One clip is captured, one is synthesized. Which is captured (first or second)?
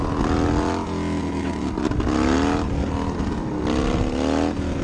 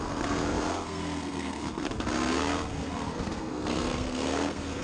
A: first